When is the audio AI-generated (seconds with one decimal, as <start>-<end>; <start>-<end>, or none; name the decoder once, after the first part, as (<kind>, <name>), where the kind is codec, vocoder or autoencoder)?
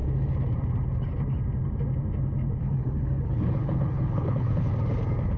2.6-4.7 (codec, HILCodec)